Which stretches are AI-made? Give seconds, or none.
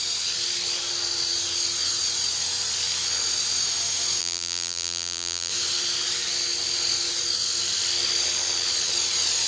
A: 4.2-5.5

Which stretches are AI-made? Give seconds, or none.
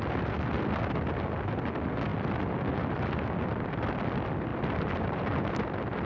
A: 2.1-4.0; 4.5-5.4